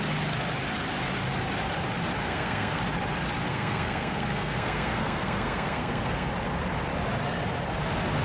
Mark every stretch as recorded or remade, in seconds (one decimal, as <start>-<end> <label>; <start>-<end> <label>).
0.0-2.2 recorded; 2.2-2.8 remade; 2.8-3.5 recorded; 3.5-6.3 remade; 6.3-8.2 recorded